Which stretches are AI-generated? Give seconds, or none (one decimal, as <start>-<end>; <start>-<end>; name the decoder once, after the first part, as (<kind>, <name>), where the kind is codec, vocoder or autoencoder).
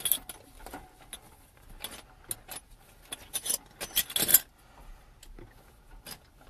none